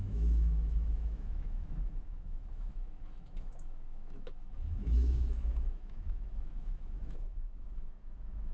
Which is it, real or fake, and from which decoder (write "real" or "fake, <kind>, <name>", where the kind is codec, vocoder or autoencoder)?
fake, autoencoder, DAC-VAE